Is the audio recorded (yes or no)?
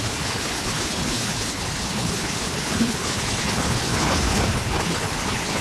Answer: no